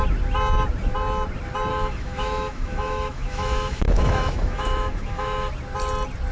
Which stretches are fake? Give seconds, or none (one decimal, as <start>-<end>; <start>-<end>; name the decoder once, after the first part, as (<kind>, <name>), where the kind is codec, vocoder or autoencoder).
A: 1.7-5.5 (autoencoder, DAC-VAE)